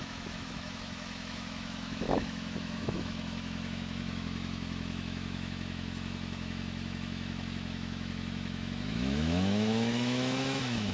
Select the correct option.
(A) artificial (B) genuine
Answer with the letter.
A